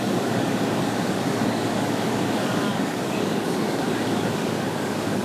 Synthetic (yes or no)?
yes